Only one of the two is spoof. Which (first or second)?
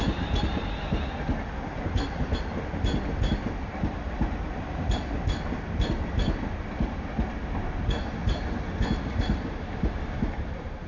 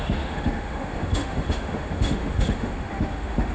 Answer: second